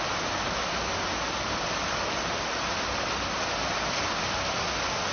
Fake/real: real